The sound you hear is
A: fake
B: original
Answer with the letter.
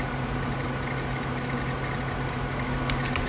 B